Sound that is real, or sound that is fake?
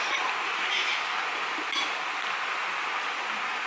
real